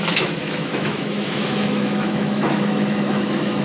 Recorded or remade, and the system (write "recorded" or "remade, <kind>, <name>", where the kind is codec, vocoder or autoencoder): remade, autoencoder, DAC-VAE